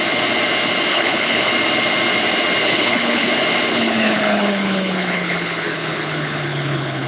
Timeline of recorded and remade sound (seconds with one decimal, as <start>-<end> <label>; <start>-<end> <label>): 0.0-0.9 recorded; 0.9-1.5 remade; 1.5-2.6 recorded; 2.6-3.3 remade; 3.3-3.7 recorded; 3.7-7.1 remade